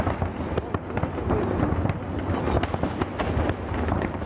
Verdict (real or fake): real